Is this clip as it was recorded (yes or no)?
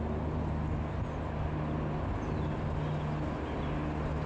yes